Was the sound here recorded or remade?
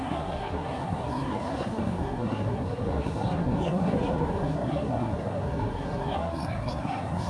remade